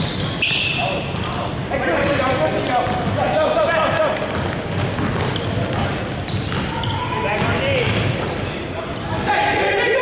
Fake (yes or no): no